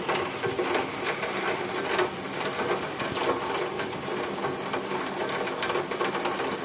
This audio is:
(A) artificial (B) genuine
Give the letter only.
B